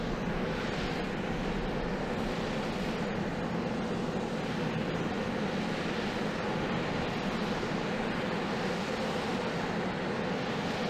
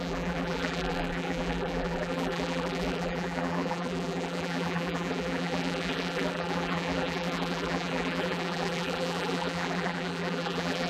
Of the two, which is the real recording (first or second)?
first